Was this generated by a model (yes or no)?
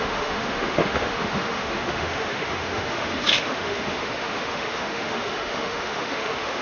yes